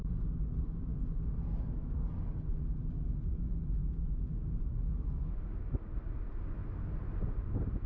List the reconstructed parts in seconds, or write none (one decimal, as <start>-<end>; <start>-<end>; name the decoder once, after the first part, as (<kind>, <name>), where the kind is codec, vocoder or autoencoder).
none